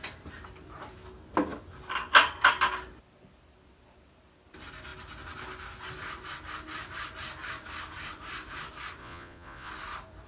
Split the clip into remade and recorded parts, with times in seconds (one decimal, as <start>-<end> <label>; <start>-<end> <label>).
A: 0.0-9.0 recorded; 9.0-9.7 remade; 9.7-10.3 recorded